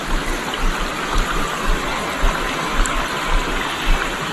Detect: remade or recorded recorded